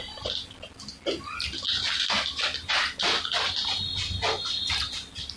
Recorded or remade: recorded